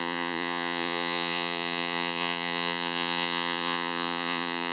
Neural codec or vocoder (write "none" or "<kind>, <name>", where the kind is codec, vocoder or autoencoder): vocoder, Vocos